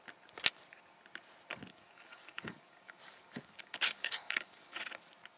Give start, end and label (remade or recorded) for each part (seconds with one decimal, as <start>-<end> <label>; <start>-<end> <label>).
0.0-1.7 recorded; 1.7-4.9 remade; 4.9-5.4 recorded